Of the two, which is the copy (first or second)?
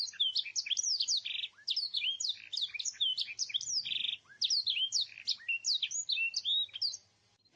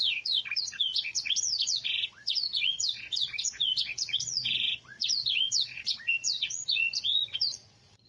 second